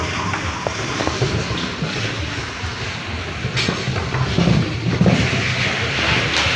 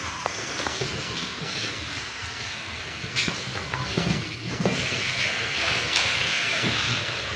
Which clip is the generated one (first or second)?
second